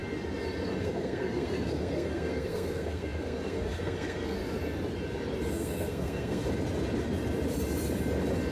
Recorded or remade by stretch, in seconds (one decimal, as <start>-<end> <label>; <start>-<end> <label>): 0.0-0.8 recorded; 0.8-4.4 remade; 4.4-5.5 recorded; 5.5-6.4 remade; 6.4-8.5 recorded